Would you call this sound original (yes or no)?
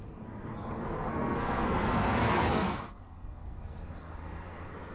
no